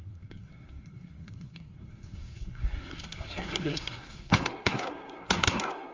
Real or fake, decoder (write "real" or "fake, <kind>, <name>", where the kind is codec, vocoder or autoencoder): fake, codec, SNAC